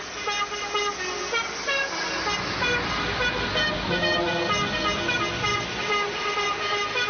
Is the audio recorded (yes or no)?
yes